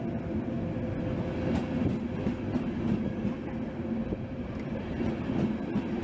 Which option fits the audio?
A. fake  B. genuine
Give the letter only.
B